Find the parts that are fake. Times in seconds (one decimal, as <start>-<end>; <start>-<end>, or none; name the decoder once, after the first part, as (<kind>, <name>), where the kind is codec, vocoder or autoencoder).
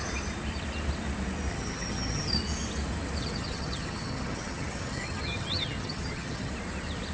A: 1.5-2.3 (vocoder, HiFi-GAN); 3.2-6.5